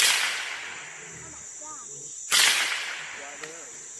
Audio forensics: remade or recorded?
recorded